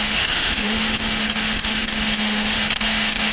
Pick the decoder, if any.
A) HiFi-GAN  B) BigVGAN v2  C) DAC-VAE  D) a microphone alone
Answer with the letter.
C